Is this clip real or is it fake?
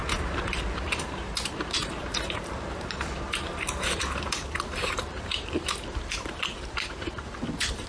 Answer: fake